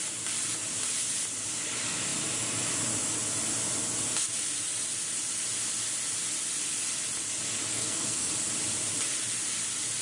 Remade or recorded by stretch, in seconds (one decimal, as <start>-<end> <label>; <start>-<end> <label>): 0.0-7.7 recorded; 7.7-8.3 remade; 8.3-10.0 recorded

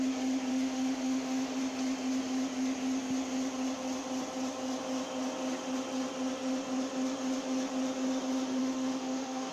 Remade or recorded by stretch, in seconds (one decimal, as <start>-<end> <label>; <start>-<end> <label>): 0.0-0.5 recorded; 0.5-1.6 remade; 1.6-8.6 recorded; 8.6-9.5 remade

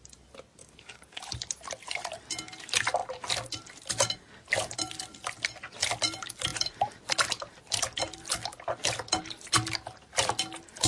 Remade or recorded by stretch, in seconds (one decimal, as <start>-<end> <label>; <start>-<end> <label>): 0.0-0.6 recorded; 0.6-1.2 remade; 1.2-10.9 recorded

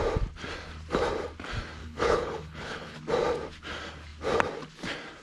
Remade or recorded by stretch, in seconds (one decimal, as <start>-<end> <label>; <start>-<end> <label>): 0.0-1.8 recorded; 1.8-3.0 remade; 3.0-5.2 recorded

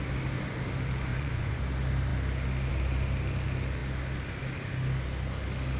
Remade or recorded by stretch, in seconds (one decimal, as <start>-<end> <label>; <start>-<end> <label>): 0.0-1.1 recorded; 1.1-1.6 remade; 1.6-5.8 recorded

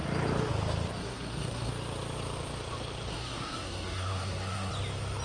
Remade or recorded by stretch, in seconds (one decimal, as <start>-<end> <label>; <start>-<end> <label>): 0.0-1.0 recorded; 1.0-1.7 remade; 1.7-3.1 recorded; 3.1-4.7 remade; 4.7-5.2 recorded